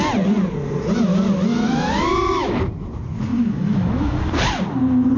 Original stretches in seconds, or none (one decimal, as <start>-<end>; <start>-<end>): 0.0-1.5; 2.6-3.3; 4.2-5.2